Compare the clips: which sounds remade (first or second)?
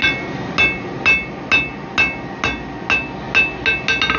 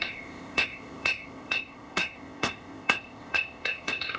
second